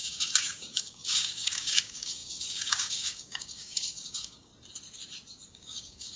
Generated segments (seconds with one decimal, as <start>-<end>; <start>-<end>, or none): 0.0-4.5; 5.5-6.2